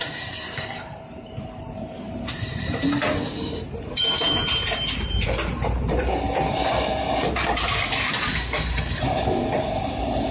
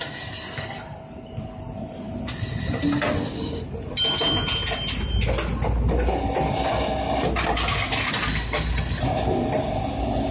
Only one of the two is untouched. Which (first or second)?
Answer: second